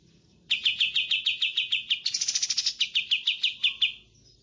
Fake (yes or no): no